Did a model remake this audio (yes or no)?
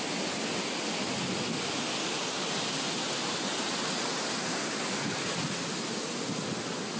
no